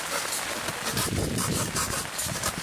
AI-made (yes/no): no